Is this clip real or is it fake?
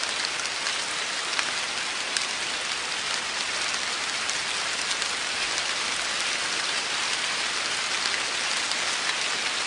real